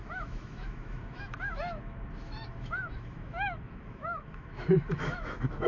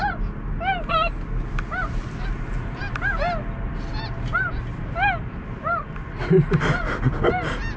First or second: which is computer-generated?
first